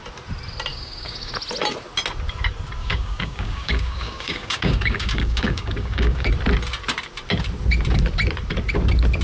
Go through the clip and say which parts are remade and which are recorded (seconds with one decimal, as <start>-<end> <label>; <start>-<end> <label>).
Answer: 0.0-0.7 recorded; 0.7-1.3 remade; 1.3-2.8 recorded; 2.8-6.3 remade; 6.3-9.2 recorded